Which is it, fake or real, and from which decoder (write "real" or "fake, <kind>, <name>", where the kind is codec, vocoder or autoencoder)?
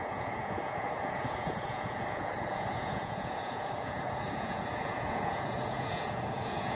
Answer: fake, vocoder, Vocos